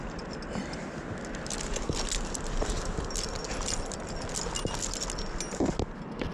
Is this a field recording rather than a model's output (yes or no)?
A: yes